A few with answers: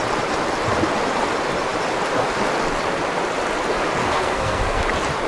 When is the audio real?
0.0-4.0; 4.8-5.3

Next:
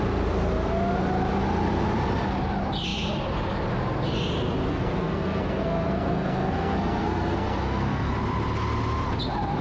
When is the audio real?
0.0-4.7; 8.1-9.6

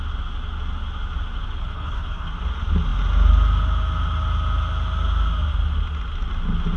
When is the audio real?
0.0-1.6; 2.3-6.8

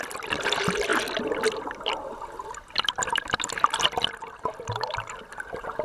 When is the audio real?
0.0-5.8

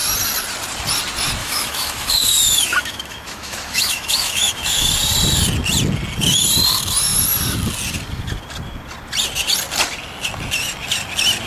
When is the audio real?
0.0-1.4; 4.9-11.5

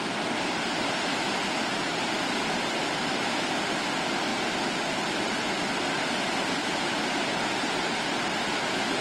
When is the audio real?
0.0-9.0

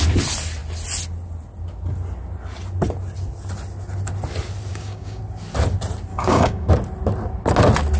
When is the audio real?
0.0-4.7; 5.2-6.1; 6.7-8.0